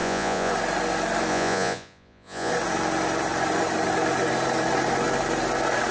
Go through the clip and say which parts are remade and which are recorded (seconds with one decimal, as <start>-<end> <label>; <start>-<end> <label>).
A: 0.0-0.5 remade; 0.5-1.3 recorded; 1.3-2.5 remade; 2.5-5.9 recorded